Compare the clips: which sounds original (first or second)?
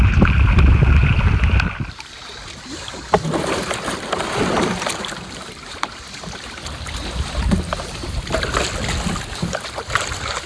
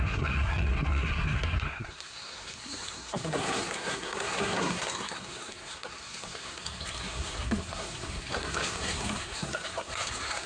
first